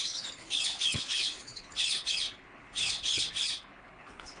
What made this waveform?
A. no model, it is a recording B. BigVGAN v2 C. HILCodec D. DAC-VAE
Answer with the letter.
C